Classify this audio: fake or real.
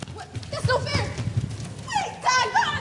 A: real